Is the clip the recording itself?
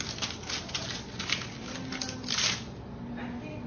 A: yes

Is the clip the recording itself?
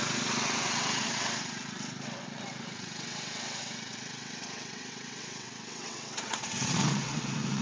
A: no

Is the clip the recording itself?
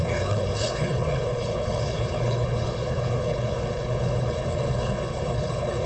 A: no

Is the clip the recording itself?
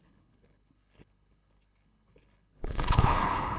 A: no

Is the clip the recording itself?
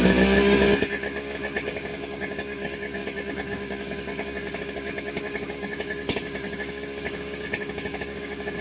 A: no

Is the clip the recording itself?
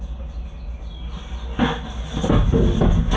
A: yes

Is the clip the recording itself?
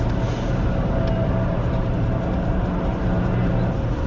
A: yes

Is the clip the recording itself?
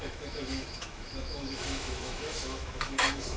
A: no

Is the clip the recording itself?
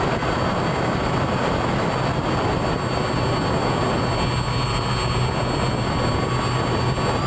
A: yes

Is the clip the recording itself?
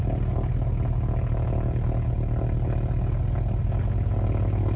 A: yes